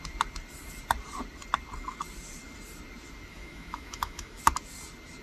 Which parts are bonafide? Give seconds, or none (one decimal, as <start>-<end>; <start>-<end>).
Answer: 0.0-3.3; 4.4-5.2